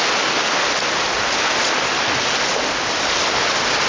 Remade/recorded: recorded